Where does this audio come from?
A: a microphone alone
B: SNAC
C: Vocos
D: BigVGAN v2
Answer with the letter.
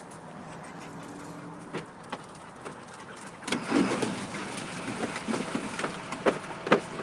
A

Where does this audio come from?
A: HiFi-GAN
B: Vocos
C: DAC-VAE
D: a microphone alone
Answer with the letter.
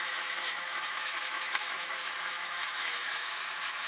C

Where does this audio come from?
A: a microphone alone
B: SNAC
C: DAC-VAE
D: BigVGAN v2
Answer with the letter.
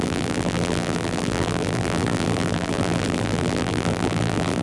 D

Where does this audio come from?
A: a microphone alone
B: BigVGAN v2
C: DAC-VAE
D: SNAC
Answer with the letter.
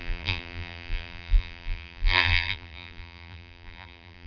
B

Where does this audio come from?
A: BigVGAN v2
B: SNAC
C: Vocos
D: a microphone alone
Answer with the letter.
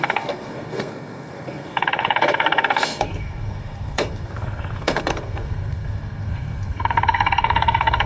B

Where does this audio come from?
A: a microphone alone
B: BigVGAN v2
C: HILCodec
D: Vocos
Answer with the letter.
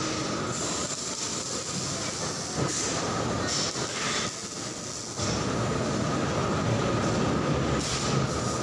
A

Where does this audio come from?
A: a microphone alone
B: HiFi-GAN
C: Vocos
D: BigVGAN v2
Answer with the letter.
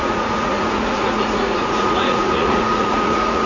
C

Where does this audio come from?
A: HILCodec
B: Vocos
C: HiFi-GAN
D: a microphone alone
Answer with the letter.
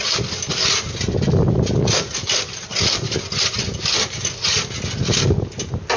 D